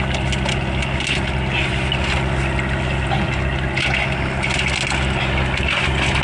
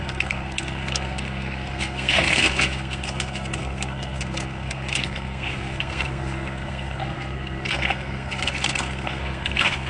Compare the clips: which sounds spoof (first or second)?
second